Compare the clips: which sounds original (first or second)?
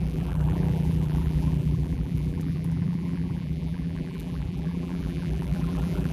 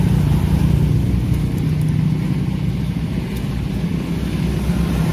second